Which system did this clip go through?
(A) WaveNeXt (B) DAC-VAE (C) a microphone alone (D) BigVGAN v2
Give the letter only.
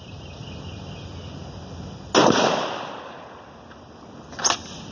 C